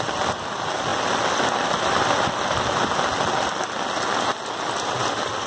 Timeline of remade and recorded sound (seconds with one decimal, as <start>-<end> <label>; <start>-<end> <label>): 0.0-5.5 recorded